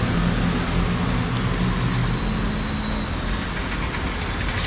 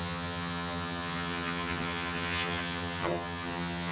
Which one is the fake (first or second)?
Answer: second